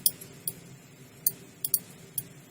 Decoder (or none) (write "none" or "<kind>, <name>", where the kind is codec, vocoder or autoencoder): none